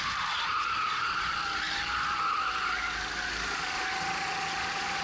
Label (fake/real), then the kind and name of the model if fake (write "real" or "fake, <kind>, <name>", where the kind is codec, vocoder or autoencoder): real